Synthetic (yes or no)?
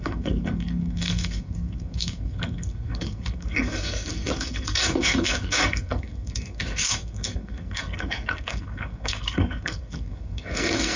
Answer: yes